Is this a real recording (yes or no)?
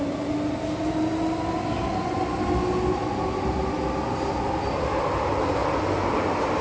yes